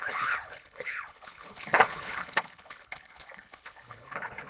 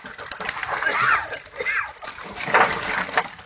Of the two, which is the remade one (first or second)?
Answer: first